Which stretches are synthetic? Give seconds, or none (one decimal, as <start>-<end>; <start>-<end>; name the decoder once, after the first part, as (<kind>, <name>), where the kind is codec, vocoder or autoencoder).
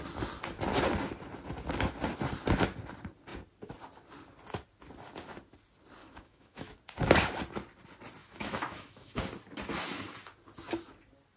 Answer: 6.0-6.7 (autoencoder, DAC-VAE); 8.2-9.1